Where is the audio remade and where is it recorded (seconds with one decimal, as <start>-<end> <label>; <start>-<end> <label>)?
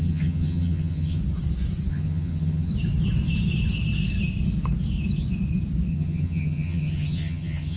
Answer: 0.0-1.2 remade; 1.2-1.9 recorded; 1.9-2.7 remade; 2.7-5.9 recorded; 5.9-7.8 remade